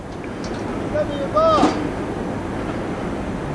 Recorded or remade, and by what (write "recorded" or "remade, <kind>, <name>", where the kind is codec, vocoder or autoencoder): recorded